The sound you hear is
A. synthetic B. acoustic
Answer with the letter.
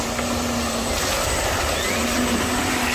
B